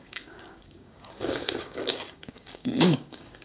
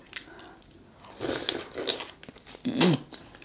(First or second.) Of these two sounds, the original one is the second